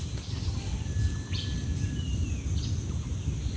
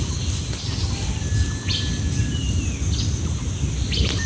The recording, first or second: second